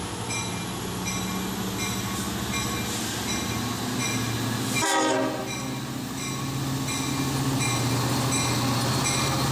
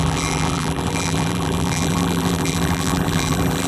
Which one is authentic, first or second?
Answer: first